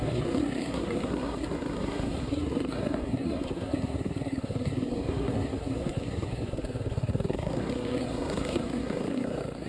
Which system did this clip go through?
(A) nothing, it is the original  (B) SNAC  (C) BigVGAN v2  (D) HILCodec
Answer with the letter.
B